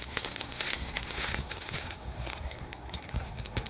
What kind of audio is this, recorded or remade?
remade